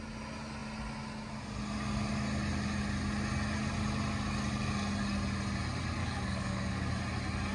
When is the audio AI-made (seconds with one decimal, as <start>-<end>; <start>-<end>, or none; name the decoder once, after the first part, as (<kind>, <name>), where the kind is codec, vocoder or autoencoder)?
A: 6.0-6.9 (codec, DAC)